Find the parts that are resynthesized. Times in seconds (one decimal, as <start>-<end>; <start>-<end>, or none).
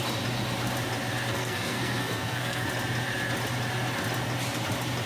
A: 1.3-2.7